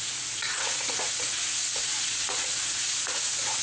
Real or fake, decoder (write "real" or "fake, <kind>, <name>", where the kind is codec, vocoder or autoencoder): fake, vocoder, Vocos